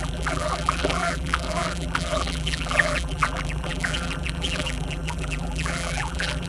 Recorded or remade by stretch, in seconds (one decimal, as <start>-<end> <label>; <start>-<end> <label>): 0.0-6.5 remade